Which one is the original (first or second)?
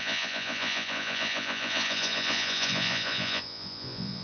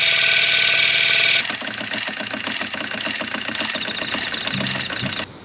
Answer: second